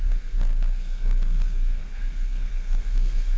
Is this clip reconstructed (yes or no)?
yes